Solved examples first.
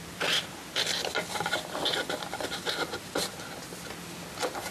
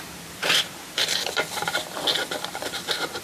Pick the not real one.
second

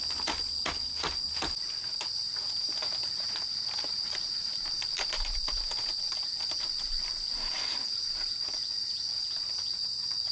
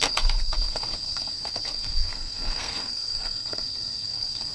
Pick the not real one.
second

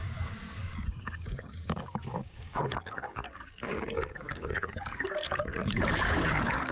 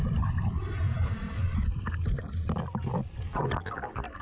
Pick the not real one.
first